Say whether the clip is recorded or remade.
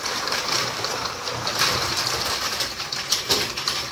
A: remade